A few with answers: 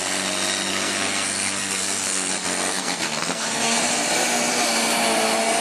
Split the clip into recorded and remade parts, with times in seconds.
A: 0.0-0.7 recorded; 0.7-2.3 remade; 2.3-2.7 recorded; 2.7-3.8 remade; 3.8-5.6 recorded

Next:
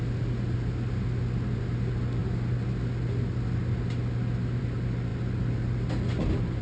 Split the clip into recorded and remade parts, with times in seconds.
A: 0.0-6.6 recorded

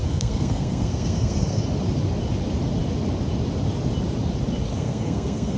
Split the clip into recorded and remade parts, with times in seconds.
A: 0.0-1.6 remade; 1.6-4.7 recorded; 4.7-5.6 remade